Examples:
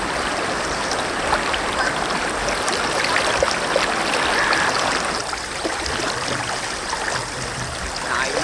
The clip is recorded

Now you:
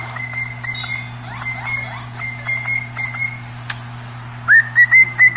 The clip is recorded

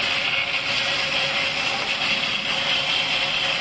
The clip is recorded